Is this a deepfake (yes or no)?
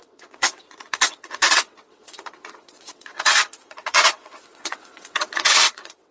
yes